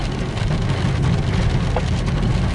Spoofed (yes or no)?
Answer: no